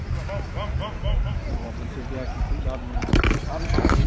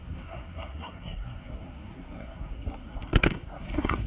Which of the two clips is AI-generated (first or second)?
second